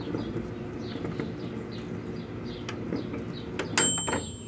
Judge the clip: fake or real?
real